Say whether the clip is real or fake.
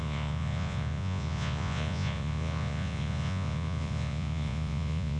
fake